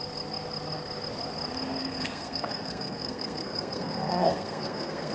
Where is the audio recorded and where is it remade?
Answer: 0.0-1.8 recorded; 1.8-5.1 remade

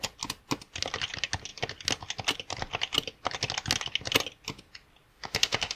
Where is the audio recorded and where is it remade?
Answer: 0.0-5.1 recorded; 5.1-5.8 remade

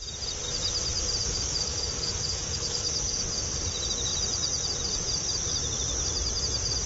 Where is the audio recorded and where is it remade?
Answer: 0.0-1.2 recorded; 1.2-3.2 remade; 3.2-6.9 recorded

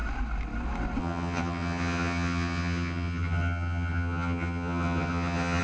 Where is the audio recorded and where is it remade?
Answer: 0.0-1.0 recorded; 1.0-5.6 remade